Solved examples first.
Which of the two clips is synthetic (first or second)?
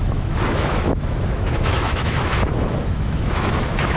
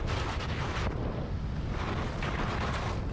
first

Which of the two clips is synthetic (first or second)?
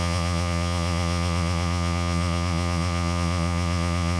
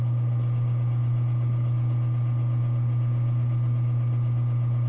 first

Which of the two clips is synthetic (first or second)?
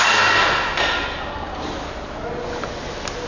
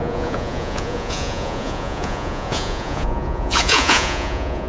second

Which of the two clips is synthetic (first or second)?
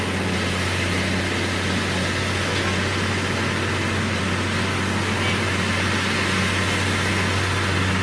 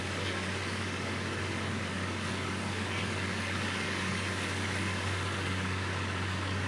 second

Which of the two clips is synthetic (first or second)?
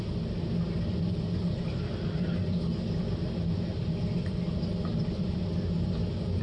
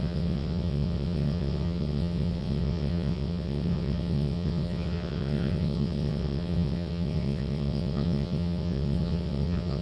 second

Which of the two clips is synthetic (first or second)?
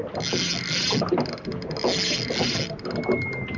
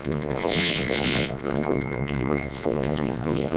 second